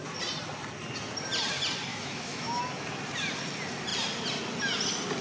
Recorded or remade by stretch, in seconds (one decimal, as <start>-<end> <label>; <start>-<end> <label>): 0.0-1.9 recorded; 1.9-2.6 remade; 2.6-5.2 recorded